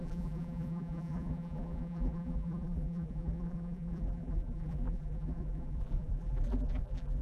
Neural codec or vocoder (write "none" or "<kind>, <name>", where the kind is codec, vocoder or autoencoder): vocoder, BigVGAN v2